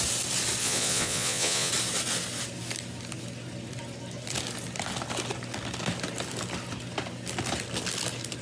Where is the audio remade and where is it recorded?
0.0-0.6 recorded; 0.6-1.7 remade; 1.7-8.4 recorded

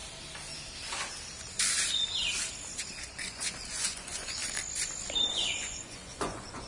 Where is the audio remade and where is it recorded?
0.0-3.0 recorded; 3.0-4.4 remade; 4.4-5.3 recorded; 5.3-6.7 remade

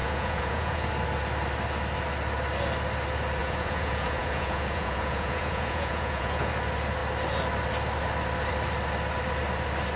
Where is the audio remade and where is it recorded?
0.0-0.9 remade; 0.9-3.4 recorded; 3.4-6.5 remade; 6.5-10.0 recorded

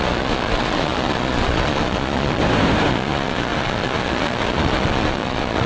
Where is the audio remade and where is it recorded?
0.0-2.4 remade; 2.4-2.9 recorded; 2.9-5.7 remade